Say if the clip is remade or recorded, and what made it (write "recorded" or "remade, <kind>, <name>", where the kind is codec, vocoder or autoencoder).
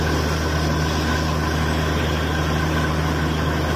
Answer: recorded